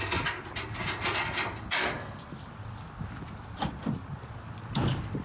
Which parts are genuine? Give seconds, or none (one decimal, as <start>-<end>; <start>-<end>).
0.0-5.2